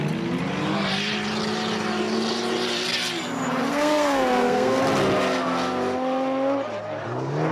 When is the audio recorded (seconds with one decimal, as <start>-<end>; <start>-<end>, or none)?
0.0-3.7; 4.8-7.5